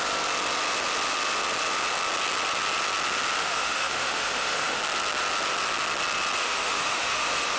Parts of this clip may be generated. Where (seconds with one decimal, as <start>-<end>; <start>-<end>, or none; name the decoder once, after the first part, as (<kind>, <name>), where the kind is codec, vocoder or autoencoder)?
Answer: 3.4-4.8 (autoencoder, DAC-VAE); 6.4-7.6